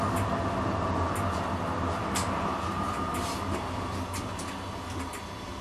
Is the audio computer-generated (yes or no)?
no